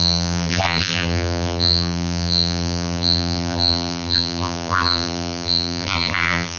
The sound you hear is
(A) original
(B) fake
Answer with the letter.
B